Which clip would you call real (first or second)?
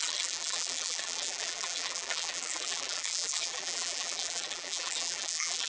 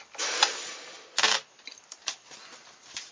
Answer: second